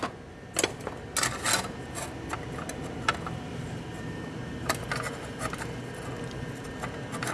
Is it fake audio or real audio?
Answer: real